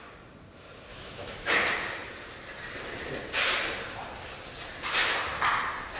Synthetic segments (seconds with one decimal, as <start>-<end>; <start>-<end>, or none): 0.9-1.5